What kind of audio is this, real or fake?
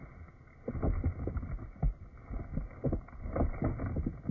real